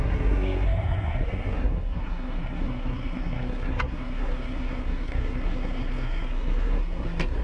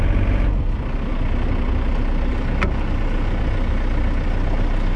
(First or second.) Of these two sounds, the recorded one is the second